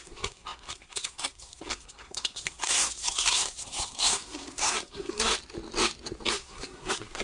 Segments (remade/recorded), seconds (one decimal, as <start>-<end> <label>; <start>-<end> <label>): 0.0-5.3 remade; 5.3-6.3 recorded; 6.3-7.2 remade